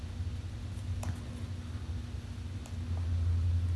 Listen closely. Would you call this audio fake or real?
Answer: real